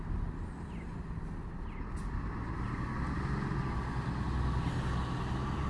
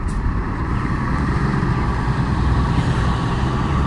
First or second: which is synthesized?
second